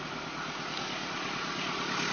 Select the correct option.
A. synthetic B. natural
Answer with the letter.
B